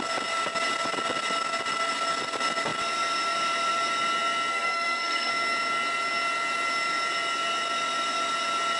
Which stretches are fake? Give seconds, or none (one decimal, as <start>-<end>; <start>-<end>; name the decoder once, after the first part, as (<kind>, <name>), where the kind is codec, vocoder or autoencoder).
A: 4.5-5.3 (codec, SNAC)